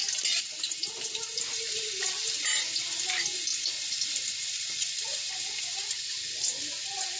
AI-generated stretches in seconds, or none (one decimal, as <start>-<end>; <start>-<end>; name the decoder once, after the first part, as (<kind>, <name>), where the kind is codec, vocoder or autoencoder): 0.0-2.6 (vocoder, BigVGAN v2); 3.5-6.4